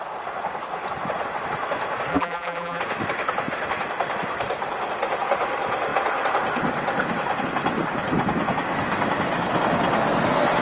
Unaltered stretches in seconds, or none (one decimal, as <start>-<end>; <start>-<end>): 0.0-2.1; 2.8-10.6